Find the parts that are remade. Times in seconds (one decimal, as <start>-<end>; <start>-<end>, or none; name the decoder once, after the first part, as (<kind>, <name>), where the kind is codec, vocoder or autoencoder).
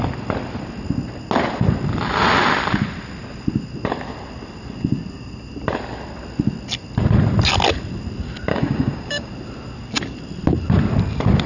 8.5-9.3 (codec, DAC)